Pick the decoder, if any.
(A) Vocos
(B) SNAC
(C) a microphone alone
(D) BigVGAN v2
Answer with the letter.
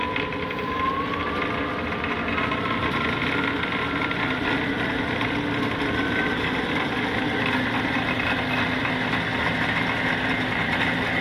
C